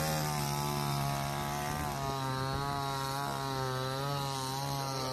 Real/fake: real